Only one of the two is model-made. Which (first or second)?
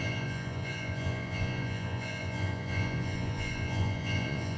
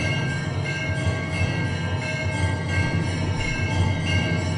first